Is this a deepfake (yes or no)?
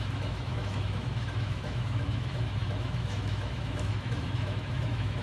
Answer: yes